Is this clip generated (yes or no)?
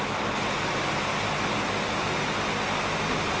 no